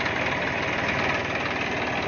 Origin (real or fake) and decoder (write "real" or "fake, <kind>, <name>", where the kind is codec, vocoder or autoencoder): real